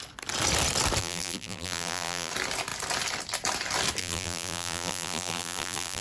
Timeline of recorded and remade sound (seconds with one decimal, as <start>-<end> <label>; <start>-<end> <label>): 0.0-1.0 recorded; 1.0-2.3 remade; 2.3-4.0 recorded; 4.0-6.0 remade